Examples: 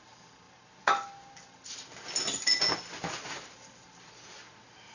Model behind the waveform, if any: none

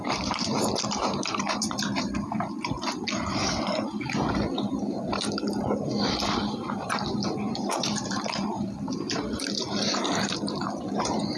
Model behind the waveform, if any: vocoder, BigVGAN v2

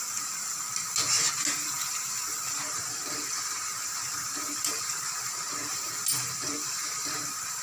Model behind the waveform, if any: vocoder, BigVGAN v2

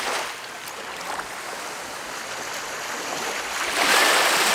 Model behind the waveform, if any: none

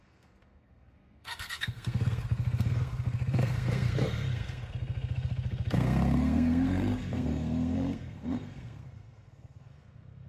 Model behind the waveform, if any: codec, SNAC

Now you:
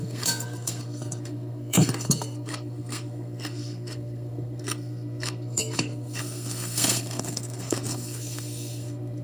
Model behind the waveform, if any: codec, SNAC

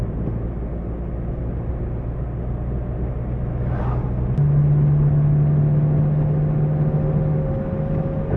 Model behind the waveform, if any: none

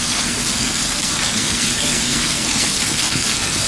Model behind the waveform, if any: codec, SNAC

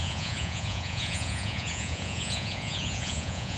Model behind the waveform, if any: vocoder, Vocos